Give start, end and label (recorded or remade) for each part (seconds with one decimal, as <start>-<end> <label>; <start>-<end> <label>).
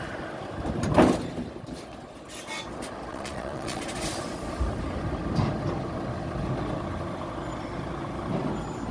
0.0-3.1 recorded; 3.1-3.8 remade; 3.8-8.9 recorded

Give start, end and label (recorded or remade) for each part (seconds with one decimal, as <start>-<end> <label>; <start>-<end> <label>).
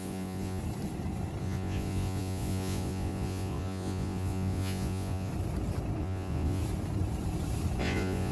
0.0-0.6 remade; 0.6-1.4 recorded; 1.4-5.3 remade; 5.3-6.0 recorded; 6.0-6.6 remade; 6.6-7.8 recorded; 7.8-8.3 remade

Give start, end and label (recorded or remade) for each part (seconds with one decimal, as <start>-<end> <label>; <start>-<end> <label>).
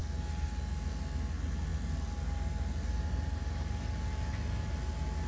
0.0-5.3 recorded